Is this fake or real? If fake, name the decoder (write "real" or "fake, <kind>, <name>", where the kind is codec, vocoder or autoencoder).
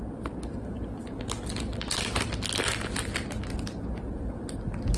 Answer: real